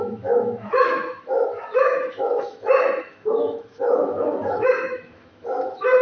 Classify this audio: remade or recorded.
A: remade